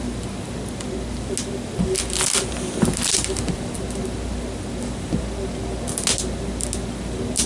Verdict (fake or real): real